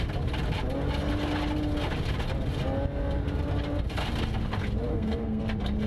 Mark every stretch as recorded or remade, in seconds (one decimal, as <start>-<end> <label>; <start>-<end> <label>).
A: 0.0-4.9 recorded; 4.9-5.4 remade; 5.4-5.9 recorded